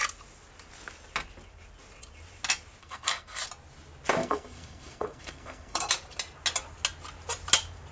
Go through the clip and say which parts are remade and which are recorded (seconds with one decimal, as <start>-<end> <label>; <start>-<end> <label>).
0.0-2.8 recorded; 2.8-3.4 remade; 3.4-4.2 recorded; 4.2-5.9 remade; 5.9-7.9 recorded